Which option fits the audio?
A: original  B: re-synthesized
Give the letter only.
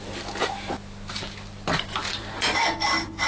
A